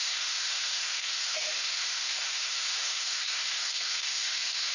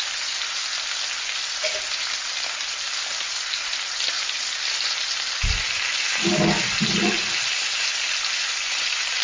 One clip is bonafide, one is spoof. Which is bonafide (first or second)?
second